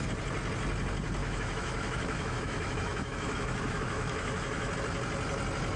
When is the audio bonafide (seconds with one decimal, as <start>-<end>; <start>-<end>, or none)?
0.0-1.2; 4.7-5.8